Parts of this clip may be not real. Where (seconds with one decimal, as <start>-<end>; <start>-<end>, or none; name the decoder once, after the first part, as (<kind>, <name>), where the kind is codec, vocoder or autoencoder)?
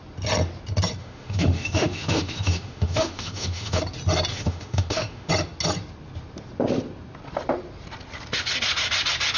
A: 1.0-3.8 (autoencoder, DAC-VAE); 4.3-5.3